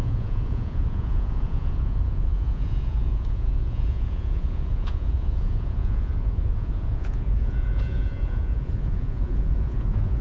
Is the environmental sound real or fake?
fake